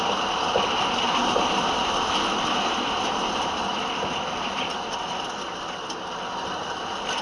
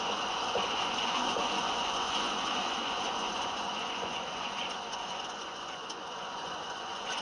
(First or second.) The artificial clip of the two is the second